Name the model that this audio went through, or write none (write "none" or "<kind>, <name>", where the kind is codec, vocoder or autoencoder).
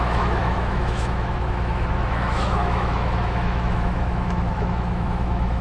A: autoencoder, DAC-VAE